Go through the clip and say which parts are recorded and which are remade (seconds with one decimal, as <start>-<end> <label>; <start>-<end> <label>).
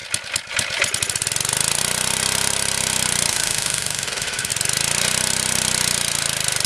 0.0-3.3 recorded; 3.3-4.5 remade; 4.5-6.7 recorded